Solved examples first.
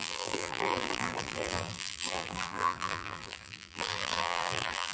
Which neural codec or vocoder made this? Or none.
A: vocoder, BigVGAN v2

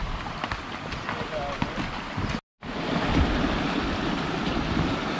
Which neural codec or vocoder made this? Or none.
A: none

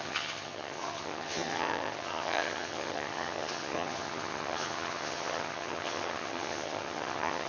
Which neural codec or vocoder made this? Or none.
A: vocoder, HiFi-GAN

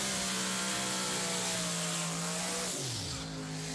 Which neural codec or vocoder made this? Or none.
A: none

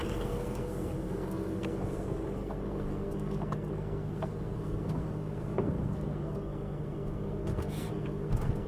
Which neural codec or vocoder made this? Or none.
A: codec, SNAC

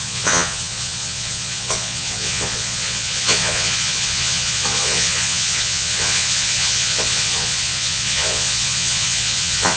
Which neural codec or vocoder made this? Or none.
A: vocoder, Vocos